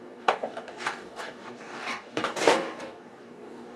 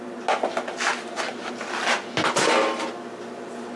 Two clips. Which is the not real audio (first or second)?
first